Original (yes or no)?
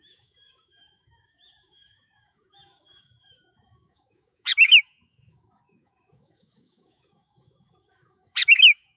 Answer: no